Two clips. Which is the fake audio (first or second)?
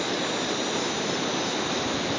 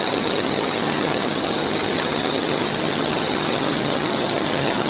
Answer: second